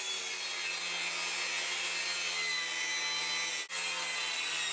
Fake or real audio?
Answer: real